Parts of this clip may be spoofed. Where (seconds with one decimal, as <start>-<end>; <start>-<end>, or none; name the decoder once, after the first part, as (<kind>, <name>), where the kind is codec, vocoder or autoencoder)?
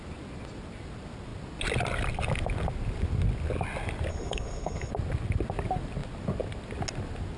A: 4.1-4.9 (codec, HILCodec)